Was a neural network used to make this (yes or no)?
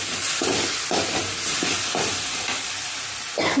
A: no